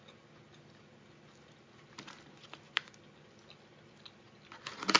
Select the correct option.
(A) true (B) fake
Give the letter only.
A